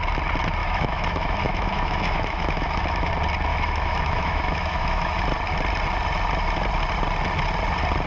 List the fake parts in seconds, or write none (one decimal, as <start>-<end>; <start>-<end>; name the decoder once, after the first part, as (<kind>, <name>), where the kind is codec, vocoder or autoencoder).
0.6-3.1 (autoencoder, DAC-VAE); 3.5-5.2